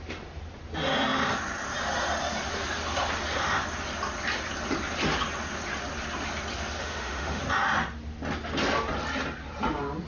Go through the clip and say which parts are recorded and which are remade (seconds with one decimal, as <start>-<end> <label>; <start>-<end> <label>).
0.0-6.8 recorded; 6.8-7.4 remade; 7.4-10.1 recorded